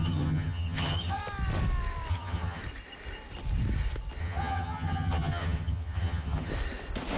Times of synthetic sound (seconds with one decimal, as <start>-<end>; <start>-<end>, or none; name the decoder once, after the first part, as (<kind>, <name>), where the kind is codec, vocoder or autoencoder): 0.0-1.2 (vocoder, HiFi-GAN); 2.1-2.6; 4.2-6.5